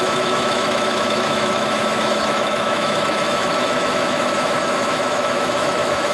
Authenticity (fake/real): fake